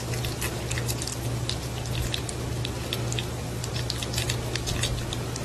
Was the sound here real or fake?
real